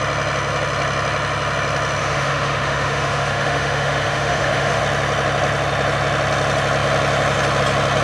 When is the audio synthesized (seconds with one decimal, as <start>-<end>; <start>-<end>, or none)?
2.0-4.8